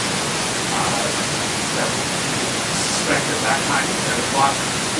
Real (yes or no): no